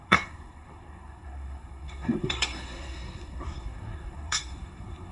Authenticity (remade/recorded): remade